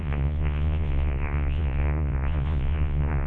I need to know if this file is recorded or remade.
remade